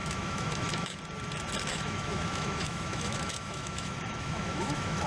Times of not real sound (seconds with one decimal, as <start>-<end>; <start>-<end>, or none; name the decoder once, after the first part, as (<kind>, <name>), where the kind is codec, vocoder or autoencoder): 0.0-1.0 (autoencoder, DAC-VAE); 1.7-5.1